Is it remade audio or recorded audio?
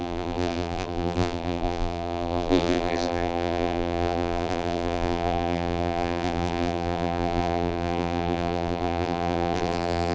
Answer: remade